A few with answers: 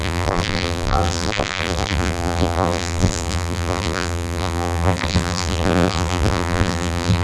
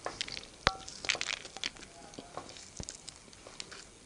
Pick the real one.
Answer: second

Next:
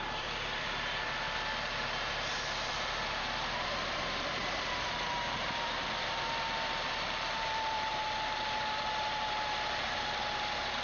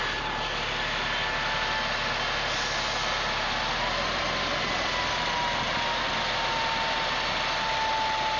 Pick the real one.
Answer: second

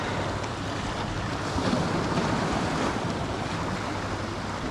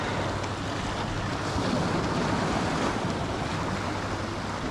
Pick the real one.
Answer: second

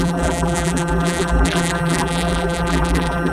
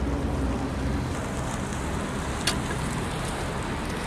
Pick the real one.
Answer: second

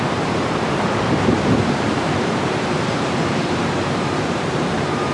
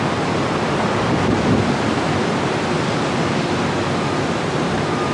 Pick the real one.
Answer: second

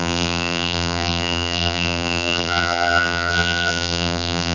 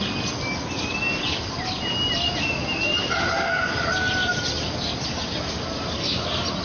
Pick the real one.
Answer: second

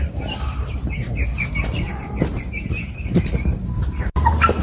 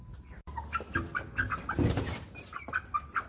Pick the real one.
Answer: second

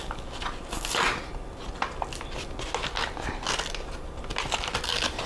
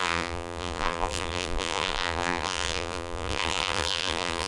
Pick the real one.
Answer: first